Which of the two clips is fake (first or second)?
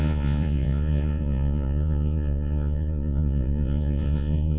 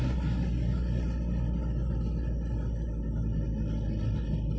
first